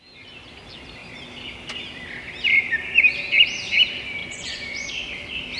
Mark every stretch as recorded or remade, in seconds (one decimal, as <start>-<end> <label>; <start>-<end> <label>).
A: 0.0-4.2 recorded; 4.2-4.9 remade; 4.9-5.6 recorded